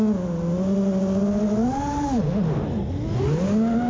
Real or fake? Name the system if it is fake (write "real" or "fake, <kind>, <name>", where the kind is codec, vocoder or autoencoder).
real